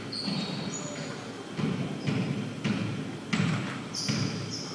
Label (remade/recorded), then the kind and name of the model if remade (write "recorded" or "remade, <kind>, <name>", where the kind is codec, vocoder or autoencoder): recorded